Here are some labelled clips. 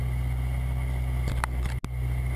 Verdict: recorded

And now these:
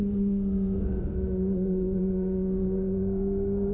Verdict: remade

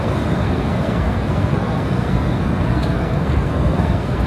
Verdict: remade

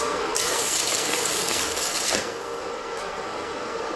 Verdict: remade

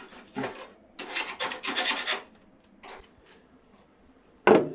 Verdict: recorded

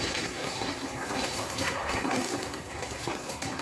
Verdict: remade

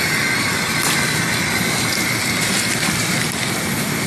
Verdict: recorded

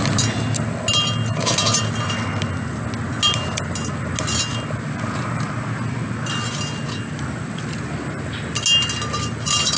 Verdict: recorded